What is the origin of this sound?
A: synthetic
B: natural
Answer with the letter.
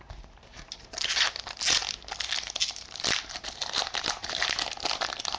B